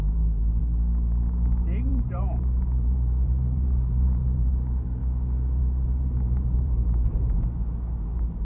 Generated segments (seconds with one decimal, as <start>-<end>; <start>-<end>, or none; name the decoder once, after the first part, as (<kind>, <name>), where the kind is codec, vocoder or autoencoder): 0.0-0.6 (vocoder, BigVGAN v2); 1.9-5.0; 5.6-8.4